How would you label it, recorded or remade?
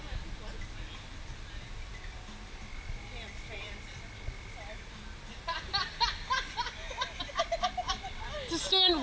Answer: recorded